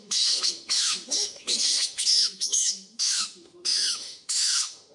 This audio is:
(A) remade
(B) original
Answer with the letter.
A